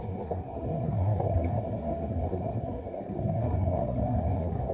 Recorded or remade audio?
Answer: remade